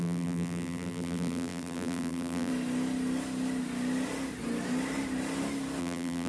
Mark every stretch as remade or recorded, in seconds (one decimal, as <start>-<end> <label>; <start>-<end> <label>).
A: 0.0-2.5 remade; 2.5-5.8 recorded; 5.8-6.3 remade